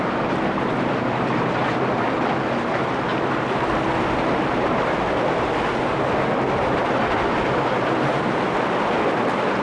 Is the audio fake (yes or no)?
no